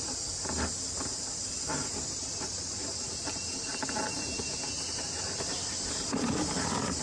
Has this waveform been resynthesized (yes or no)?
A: no